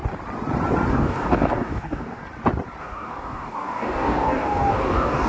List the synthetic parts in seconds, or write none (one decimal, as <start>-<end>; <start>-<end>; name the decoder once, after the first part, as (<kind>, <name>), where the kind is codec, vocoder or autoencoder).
0.9-2.2 (codec, DAC); 2.8-5.3